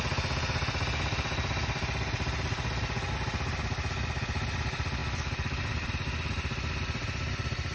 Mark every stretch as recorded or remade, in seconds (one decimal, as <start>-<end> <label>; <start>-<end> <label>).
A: 0.0-5.0 recorded; 5.0-5.9 remade; 5.9-7.7 recorded

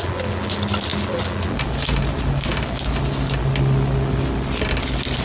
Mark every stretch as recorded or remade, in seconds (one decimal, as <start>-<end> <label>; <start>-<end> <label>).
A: 0.0-5.2 recorded

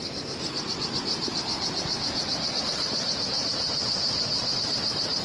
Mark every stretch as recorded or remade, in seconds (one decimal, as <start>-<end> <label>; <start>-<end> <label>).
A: 0.0-1.1 recorded; 1.1-2.6 remade; 2.6-3.5 recorded; 3.5-4.7 remade; 4.7-5.2 recorded